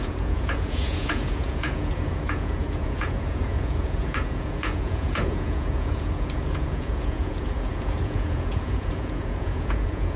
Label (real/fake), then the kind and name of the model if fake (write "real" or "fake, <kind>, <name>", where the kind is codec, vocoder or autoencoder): fake, vocoder, Vocos